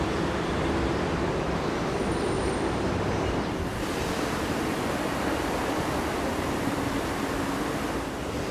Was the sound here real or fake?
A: fake